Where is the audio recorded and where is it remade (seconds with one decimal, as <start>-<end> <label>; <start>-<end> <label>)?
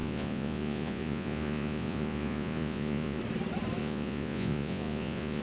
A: 0.0-3.2 remade; 3.2-3.8 recorded; 3.8-5.4 remade